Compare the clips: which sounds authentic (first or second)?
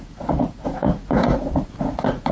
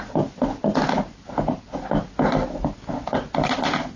second